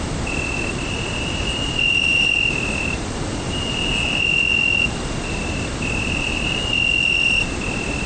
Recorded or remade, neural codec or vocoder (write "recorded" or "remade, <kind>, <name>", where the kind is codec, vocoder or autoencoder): recorded